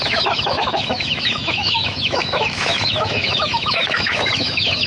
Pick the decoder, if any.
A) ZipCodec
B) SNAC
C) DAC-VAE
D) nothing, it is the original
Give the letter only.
C